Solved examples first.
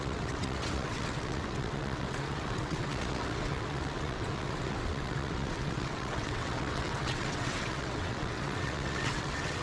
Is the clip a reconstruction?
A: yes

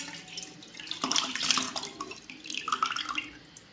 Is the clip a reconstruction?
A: no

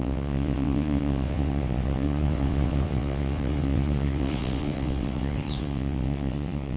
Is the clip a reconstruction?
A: yes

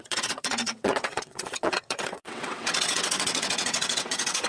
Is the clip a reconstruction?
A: yes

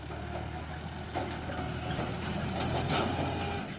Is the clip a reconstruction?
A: no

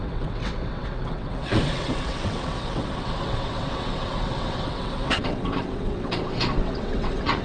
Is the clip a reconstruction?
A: yes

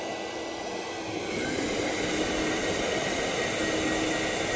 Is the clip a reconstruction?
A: no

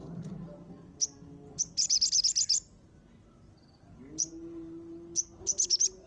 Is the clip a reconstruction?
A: no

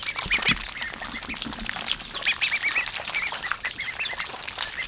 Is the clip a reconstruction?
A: no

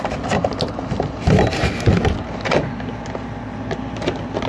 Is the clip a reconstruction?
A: no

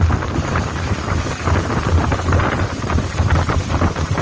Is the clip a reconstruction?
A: no